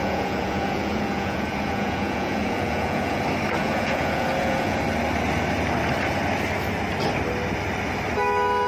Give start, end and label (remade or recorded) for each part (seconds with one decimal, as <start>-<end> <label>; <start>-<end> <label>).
0.0-3.2 remade; 3.2-3.6 recorded; 3.6-4.8 remade; 4.8-8.7 recorded